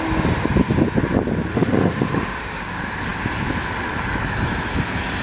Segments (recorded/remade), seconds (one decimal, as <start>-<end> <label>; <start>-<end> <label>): 0.0-1.5 recorded; 1.5-2.6 remade; 2.6-5.2 recorded